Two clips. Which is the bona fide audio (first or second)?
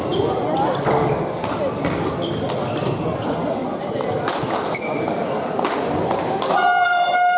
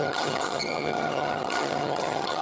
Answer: first